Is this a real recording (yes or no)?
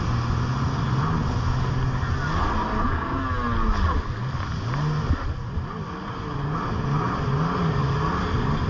yes